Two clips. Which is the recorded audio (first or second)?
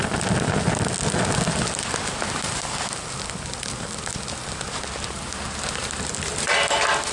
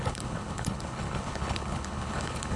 first